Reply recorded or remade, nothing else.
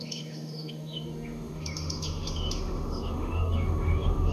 remade